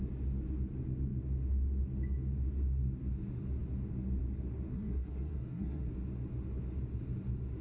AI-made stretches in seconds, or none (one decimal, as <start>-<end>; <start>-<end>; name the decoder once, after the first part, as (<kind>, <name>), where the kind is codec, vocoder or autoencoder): 4.7-5.9 (codec, SNAC)